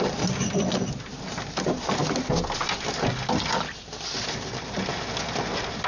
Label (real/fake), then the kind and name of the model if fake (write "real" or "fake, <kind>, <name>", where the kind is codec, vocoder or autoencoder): real